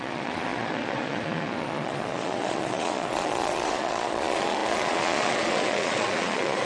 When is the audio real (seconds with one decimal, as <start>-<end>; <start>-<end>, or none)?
none